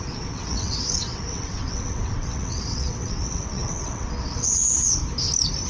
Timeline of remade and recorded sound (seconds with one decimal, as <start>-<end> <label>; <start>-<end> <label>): 0.0-5.0 remade; 5.0-5.7 recorded